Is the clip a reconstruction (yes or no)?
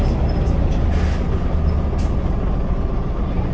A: no